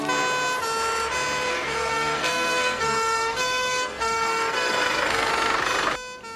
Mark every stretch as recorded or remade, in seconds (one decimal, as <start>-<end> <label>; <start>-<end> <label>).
0.0-1.5 recorded; 1.5-5.3 remade; 5.3-6.4 recorded